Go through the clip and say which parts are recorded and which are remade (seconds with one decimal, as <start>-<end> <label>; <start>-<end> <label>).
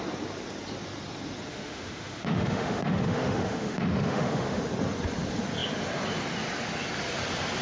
0.0-1.5 recorded; 1.5-4.6 remade; 4.6-7.6 recorded